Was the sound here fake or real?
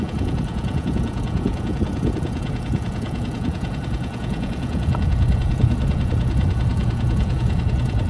fake